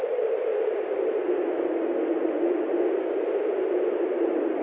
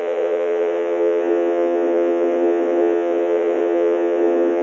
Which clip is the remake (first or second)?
second